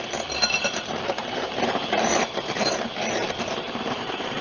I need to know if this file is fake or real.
fake